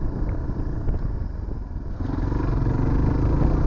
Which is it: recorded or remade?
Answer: recorded